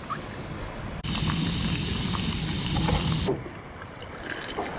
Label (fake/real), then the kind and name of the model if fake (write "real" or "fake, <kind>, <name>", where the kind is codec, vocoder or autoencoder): real